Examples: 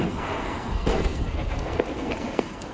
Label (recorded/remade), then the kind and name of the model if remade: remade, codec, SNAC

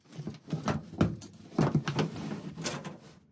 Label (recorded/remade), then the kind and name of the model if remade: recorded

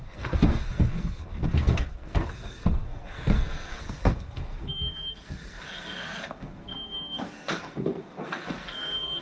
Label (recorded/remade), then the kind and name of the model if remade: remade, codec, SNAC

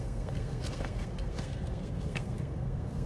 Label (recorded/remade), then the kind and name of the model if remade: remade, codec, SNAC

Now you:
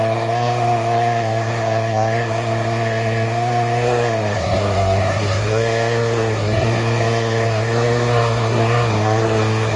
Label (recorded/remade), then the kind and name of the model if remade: remade, codec, SNAC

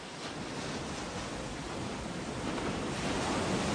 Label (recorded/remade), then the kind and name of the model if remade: recorded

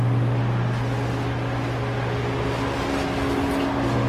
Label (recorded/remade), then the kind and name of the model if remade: recorded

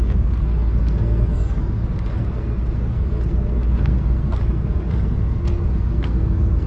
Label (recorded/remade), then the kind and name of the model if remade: remade, codec, SNAC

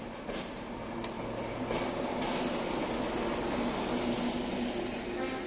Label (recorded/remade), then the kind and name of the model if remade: recorded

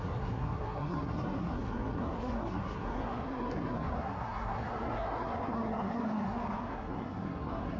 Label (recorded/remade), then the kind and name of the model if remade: remade, codec, SNAC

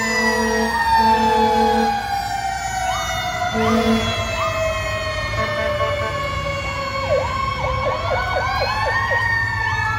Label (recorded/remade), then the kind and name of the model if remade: recorded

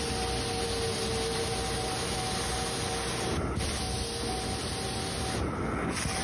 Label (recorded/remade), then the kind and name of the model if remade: recorded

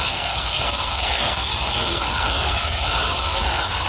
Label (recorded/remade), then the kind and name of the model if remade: remade, codec, SNAC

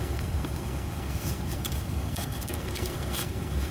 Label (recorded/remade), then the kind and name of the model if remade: remade, codec, SNAC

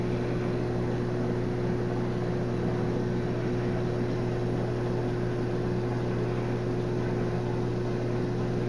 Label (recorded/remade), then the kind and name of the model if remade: recorded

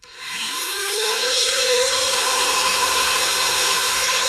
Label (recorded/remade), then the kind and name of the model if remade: remade, codec, SNAC